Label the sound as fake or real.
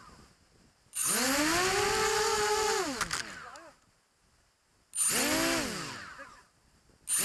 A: real